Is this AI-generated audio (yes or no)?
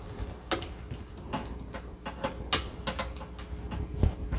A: no